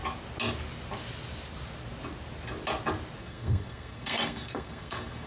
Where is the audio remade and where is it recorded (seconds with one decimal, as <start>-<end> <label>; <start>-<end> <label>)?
0.0-3.2 recorded; 3.2-5.3 remade